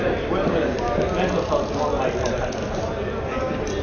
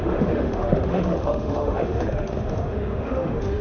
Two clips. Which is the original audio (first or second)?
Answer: first